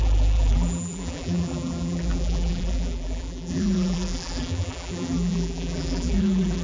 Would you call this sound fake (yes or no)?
yes